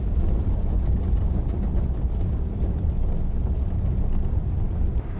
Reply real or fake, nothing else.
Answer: real